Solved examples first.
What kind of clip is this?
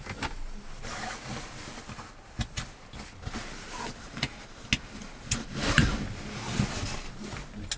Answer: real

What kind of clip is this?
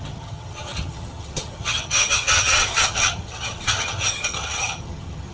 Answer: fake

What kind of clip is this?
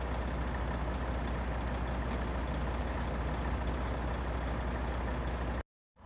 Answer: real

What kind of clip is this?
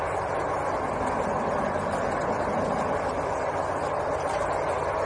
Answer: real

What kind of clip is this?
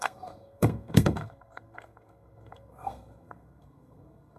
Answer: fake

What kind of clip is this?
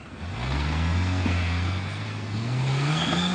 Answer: fake